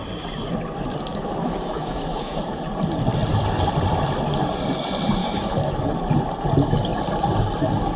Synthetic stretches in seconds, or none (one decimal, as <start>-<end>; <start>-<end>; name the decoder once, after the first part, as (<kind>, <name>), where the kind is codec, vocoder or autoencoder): 1.1-2.7 (autoencoder, DAC-VAE); 5.2-5.8